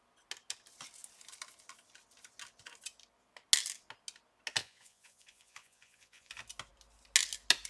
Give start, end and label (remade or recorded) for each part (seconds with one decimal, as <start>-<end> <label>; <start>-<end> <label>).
0.0-4.6 recorded; 4.6-6.3 remade; 6.3-7.7 recorded